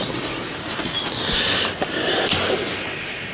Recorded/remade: recorded